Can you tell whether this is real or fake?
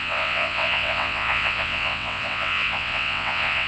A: fake